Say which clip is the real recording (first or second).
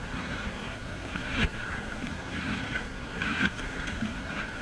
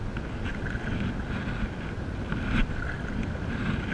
second